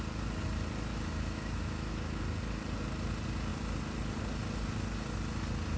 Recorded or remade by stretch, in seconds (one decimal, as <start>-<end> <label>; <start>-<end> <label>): 0.0-0.9 recorded; 0.9-2.2 remade; 2.2-5.8 recorded